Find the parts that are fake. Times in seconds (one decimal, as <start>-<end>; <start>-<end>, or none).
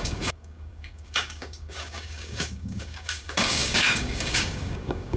0.0-5.2